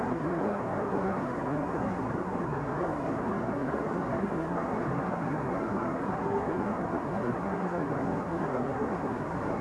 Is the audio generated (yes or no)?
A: yes